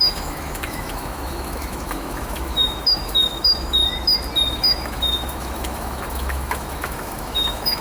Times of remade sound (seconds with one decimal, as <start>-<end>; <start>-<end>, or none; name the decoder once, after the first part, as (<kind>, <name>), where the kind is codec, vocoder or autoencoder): 0.0-3.8 (autoencoder, DAC-VAE); 4.5-7.8